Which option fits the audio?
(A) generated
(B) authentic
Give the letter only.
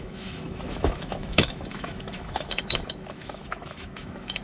A